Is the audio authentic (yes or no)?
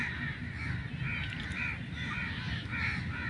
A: yes